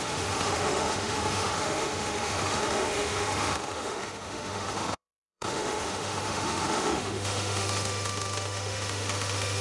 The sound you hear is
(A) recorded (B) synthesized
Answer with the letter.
B